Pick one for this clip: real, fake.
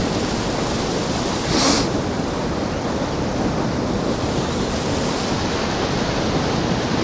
real